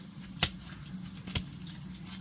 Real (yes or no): yes